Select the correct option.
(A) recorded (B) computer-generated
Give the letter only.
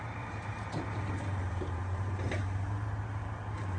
B